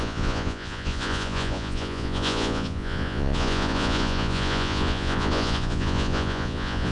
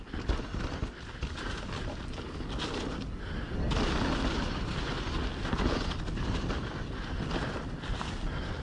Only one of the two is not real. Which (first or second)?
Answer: first